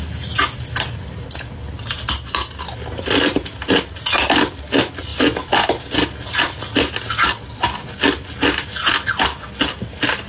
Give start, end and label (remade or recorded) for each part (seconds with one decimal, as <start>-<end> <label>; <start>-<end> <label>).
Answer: 0.0-10.3 recorded